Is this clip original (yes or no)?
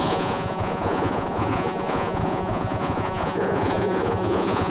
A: no